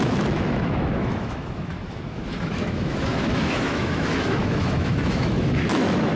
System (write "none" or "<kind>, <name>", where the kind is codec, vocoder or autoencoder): autoencoder, DAC-VAE